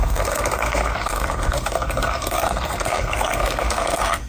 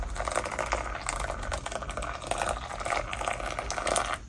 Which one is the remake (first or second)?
first